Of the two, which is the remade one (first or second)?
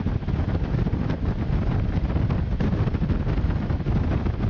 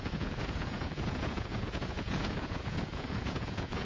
second